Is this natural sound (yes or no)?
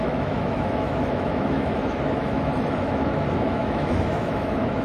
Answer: no